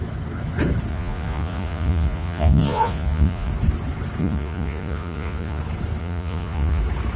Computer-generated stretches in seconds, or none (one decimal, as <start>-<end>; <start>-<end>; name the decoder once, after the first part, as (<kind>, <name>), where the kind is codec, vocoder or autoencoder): 0.9-3.5 (vocoder, Vocos); 4.2-5.6; 6.0-6.8

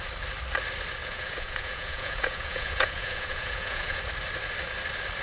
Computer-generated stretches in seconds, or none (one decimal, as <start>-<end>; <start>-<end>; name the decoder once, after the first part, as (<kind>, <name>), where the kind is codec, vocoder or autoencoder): 1.0-4.0 (vocoder, Vocos)